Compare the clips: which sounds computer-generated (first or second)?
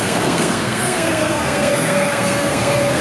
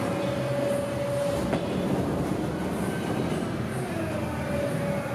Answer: first